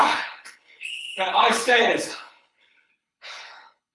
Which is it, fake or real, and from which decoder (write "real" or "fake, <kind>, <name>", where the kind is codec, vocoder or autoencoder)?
fake, codec, HILCodec